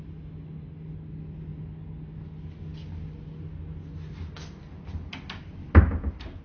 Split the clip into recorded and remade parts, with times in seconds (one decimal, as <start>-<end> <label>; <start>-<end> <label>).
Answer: 0.0-6.4 recorded